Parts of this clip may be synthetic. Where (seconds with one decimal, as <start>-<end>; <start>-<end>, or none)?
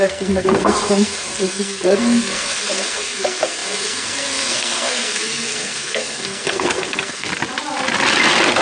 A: 0.0-7.3